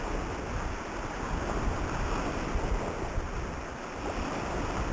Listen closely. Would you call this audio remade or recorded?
recorded